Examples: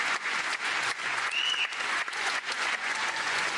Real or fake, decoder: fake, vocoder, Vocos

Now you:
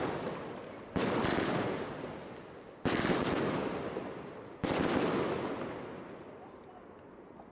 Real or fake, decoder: real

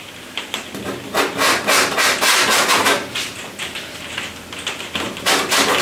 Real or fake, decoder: real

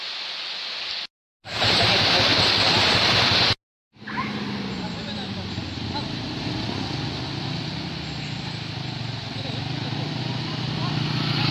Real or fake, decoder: real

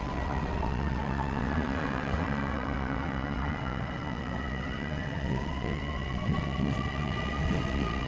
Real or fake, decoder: fake, vocoder, WaveNeXt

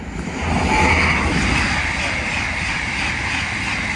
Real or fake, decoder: real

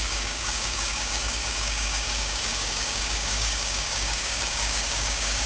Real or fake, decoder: fake, codec, DAC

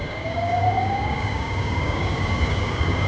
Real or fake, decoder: fake, codec, DAC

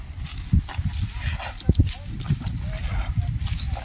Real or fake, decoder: real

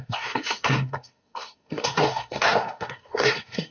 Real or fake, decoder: fake, codec, SNAC